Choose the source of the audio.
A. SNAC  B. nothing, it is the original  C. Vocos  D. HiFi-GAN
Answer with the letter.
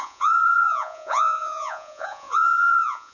C